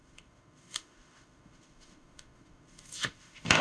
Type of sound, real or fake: fake